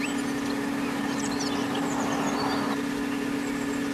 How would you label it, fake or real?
real